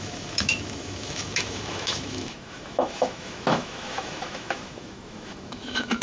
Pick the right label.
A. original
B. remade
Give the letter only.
B